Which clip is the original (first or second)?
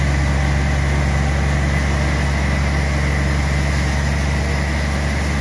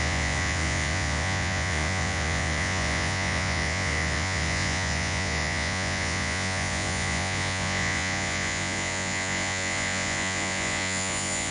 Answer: first